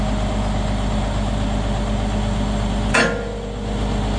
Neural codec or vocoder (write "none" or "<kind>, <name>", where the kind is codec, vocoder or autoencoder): none